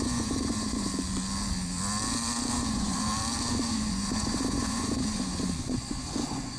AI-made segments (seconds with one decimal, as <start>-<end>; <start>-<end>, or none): 0.0-0.9; 2.7-3.1; 3.7-6.6